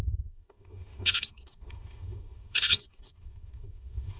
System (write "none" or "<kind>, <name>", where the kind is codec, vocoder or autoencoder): autoencoder, DAC-VAE